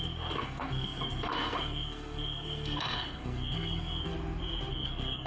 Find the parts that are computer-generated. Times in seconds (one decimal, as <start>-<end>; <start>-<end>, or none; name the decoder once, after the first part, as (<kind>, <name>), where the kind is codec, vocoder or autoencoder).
0.0-4.1 (codec, SNAC); 4.7-5.3